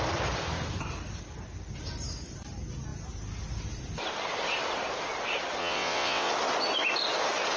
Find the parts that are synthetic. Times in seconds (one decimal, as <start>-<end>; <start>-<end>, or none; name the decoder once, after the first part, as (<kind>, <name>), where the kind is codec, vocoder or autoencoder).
5.6-6.3 (vocoder, WaveNeXt)